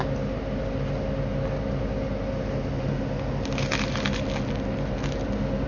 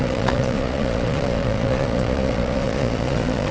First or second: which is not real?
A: second